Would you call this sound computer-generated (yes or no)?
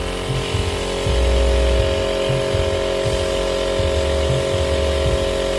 no